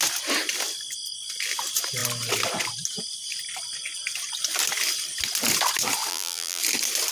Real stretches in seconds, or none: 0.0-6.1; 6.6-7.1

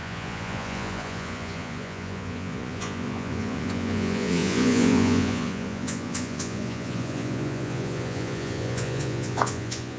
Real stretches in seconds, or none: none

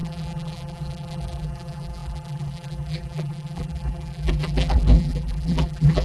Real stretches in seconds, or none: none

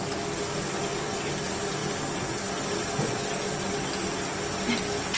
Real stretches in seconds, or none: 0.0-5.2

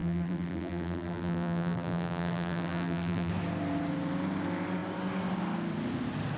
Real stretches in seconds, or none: 3.3-6.4

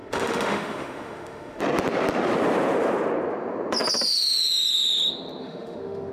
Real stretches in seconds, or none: 1.6-5.4